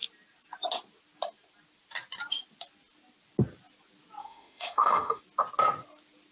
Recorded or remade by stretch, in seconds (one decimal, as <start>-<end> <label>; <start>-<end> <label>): 0.0-4.2 recorded; 4.2-5.2 remade; 5.2-6.3 recorded